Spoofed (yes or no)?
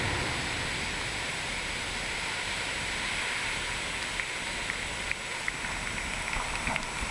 no